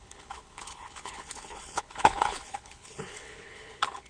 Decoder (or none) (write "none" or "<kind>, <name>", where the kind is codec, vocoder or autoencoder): codec, HILCodec